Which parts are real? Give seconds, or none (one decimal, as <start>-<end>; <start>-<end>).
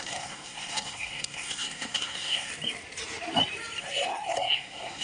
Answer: 2.5-3.8